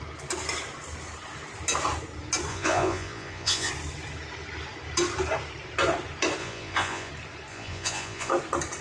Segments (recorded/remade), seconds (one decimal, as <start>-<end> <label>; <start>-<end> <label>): 0.0-2.5 recorded; 2.5-3.7 remade; 3.7-6.4 recorded; 6.4-7.1 remade; 7.1-7.5 recorded; 7.5-8.3 remade; 8.3-8.8 recorded